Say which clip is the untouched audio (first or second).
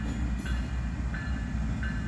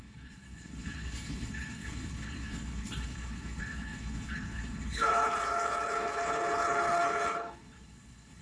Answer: first